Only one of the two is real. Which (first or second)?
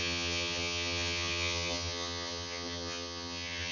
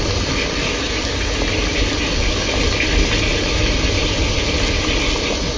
second